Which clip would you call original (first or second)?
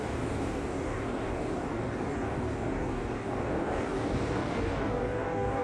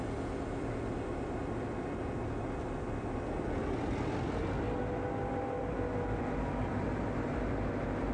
second